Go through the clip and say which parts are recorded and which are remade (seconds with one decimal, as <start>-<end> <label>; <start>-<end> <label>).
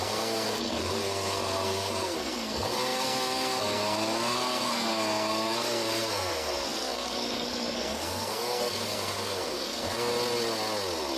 0.0-10.1 remade; 10.1-11.2 recorded